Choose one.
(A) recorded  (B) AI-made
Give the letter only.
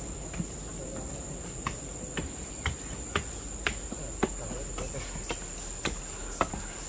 A